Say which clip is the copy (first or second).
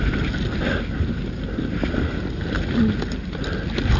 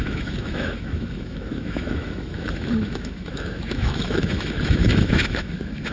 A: second